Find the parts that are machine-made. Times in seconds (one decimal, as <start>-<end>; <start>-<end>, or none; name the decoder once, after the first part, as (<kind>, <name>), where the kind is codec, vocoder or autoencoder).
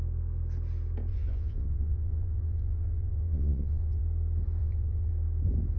1.1-4.0 (vocoder, Vocos); 4.6-5.1